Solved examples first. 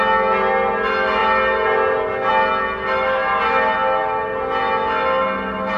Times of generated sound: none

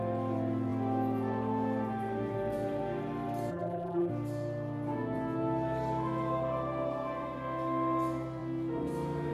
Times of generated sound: 3.5-4.1 (vocoder, BigVGAN v2)